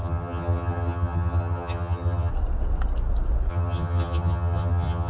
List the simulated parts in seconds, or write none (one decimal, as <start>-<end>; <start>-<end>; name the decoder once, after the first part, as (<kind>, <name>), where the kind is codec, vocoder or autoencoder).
0.0-2.3 (vocoder, HiFi-GAN); 3.5-5.1